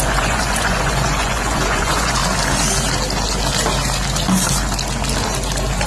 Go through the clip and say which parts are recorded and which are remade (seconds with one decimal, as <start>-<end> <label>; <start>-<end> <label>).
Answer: 0.0-2.2 remade; 2.2-5.9 recorded